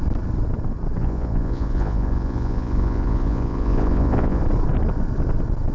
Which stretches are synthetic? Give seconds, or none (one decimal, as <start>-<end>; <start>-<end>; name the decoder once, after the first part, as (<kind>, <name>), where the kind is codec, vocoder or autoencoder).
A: 1.0-4.4 (vocoder, Vocos)